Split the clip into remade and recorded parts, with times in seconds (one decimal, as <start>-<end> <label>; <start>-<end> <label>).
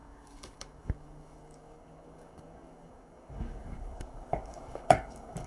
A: 0.0-5.5 remade